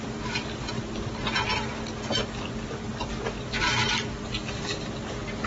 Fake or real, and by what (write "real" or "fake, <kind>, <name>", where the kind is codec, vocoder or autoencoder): real